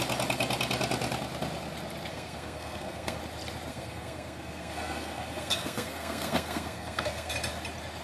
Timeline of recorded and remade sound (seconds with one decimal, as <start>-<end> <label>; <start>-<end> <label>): 0.0-2.1 recorded; 2.1-3.2 remade; 3.2-3.7 recorded; 3.7-7.3 remade; 7.3-8.0 recorded